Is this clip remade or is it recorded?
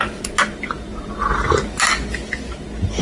recorded